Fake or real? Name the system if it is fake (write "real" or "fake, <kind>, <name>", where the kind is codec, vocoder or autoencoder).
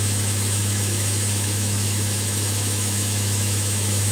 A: fake, autoencoder, DAC-VAE